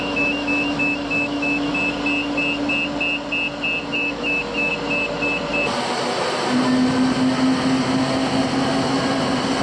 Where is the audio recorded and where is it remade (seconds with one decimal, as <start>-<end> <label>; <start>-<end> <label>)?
0.0-1.7 remade; 1.7-3.9 recorded; 3.9-4.7 remade; 4.7-9.6 recorded